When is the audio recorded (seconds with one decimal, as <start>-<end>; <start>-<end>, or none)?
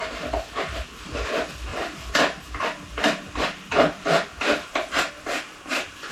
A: none